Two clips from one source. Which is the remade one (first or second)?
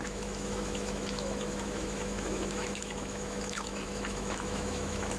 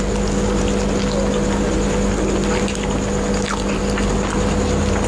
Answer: first